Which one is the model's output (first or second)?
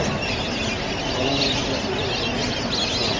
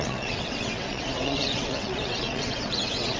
second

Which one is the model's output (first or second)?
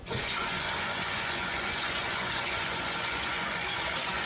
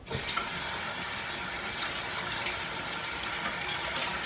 first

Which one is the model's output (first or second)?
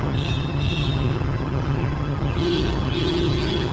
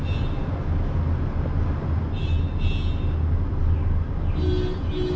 first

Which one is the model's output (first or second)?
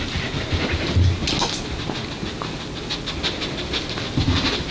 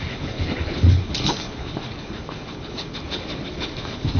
second